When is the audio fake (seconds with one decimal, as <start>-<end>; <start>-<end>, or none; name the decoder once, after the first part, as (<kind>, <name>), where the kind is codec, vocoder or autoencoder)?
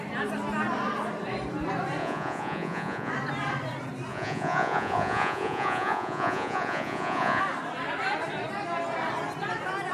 2.0-3.1 (vocoder, Vocos); 4.1-7.4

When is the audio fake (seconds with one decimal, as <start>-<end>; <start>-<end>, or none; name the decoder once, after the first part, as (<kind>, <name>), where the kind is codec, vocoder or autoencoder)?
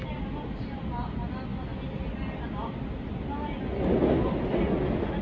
none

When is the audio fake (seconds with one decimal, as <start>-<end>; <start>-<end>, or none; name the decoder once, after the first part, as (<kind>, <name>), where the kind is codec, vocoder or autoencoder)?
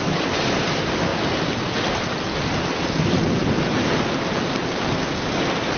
none